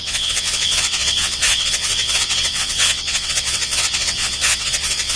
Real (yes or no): no